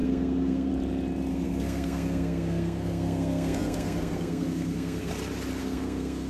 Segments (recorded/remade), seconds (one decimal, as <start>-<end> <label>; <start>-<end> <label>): 0.0-0.7 remade; 0.7-1.3 recorded; 1.3-5.1 remade; 5.1-5.6 recorded; 5.6-6.3 remade